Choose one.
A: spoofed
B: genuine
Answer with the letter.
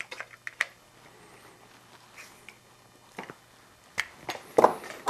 B